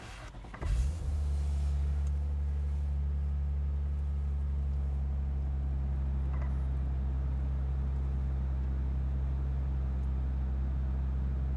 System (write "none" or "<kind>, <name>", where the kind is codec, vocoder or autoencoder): none